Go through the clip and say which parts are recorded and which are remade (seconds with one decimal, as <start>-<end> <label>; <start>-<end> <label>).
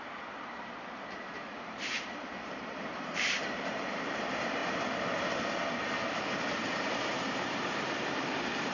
0.0-4.6 remade; 4.6-6.1 recorded; 6.1-8.7 remade